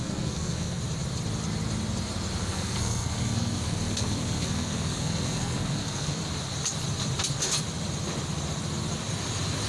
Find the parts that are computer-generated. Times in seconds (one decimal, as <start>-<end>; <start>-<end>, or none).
0.0-0.8; 2.4-6.2